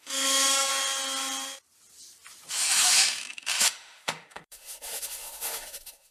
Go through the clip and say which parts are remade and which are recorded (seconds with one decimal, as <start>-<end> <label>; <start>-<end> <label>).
0.0-0.7 remade; 0.7-2.5 recorded; 2.5-6.1 remade